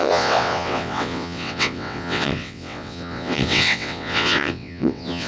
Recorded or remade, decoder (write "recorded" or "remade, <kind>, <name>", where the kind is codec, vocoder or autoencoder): remade, vocoder, WaveNeXt